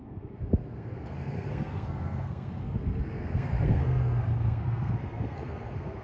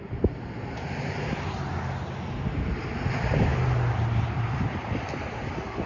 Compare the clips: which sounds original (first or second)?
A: second